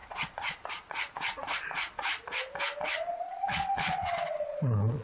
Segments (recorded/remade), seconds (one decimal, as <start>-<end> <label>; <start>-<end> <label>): 0.0-2.1 remade; 2.1-2.8 recorded; 2.8-5.0 remade